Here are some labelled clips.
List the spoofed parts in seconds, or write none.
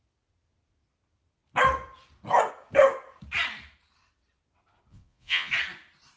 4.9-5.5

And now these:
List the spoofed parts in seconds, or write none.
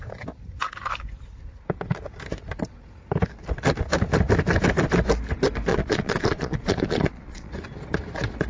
5.7-7.5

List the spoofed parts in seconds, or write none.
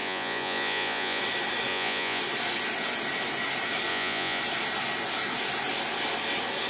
0.0-1.2; 1.7-2.2; 3.9-4.4